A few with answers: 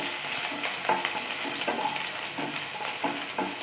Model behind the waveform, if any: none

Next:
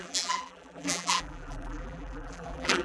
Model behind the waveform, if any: vocoder, BigVGAN v2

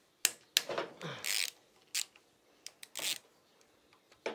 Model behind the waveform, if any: none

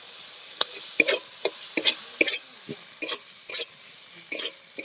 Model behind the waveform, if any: none